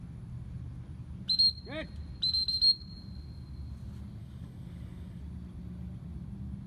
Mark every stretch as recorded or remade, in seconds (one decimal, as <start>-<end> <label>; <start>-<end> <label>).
0.0-4.2 recorded; 4.2-5.2 remade; 5.2-6.7 recorded